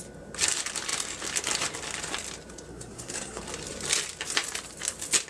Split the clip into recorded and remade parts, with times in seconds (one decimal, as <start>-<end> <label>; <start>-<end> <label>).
0.0-2.7 recorded; 2.7-3.4 remade; 3.4-5.3 recorded